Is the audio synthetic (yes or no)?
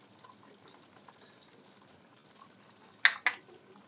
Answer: no